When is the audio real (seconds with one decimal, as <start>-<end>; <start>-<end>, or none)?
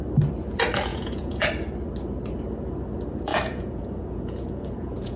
0.0-0.9; 1.5-3.3